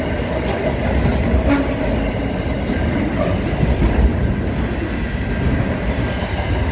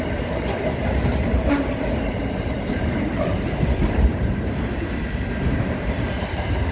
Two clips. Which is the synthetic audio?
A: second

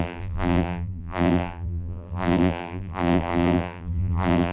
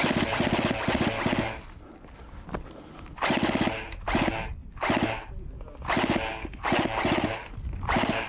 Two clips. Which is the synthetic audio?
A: first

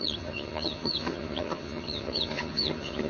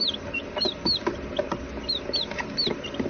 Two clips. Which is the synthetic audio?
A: first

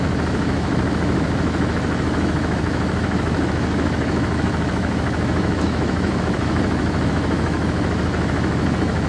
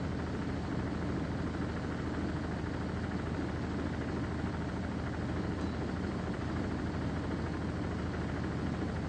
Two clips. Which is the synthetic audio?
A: first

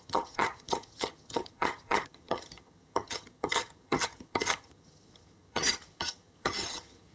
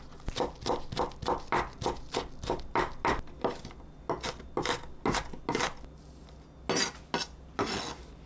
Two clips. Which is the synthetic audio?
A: first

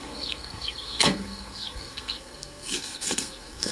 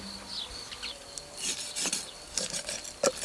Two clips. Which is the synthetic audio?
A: first